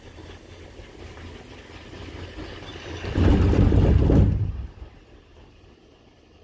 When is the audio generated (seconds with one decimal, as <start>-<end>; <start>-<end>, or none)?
none

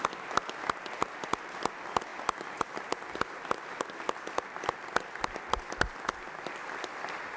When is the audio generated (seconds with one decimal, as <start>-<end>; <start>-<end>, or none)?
none

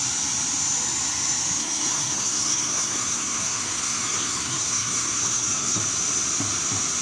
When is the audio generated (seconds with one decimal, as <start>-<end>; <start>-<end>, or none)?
1.6-5.8